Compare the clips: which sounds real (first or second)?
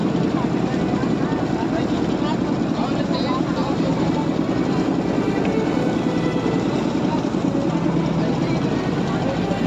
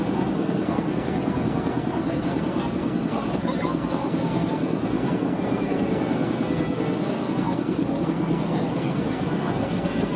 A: first